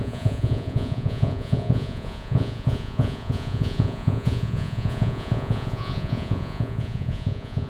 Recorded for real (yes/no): no